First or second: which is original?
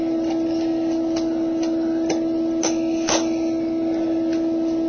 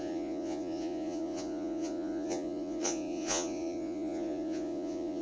first